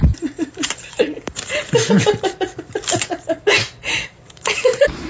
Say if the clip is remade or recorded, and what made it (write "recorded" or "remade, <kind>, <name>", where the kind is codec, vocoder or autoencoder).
remade, vocoder, BigVGAN v2